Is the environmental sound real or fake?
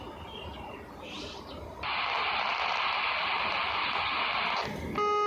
real